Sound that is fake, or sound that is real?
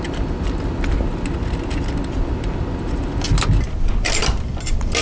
real